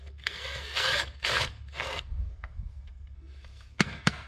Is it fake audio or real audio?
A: fake